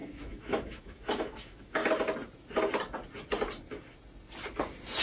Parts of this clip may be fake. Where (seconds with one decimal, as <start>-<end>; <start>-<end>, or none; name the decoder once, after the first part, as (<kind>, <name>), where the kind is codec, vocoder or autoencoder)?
0.0-1.8 (autoencoder, DAC-VAE)